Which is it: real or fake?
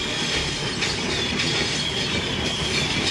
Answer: real